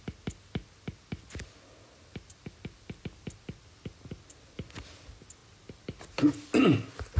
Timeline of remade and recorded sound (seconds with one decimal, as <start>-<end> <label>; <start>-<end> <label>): 0.0-7.2 recorded